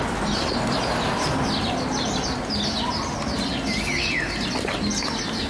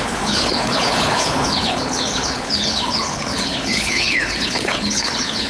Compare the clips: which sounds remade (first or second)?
second